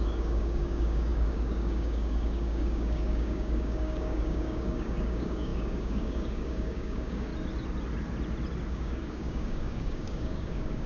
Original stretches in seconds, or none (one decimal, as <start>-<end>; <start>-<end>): 7.3-8.7